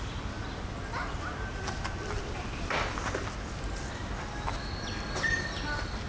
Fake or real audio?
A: real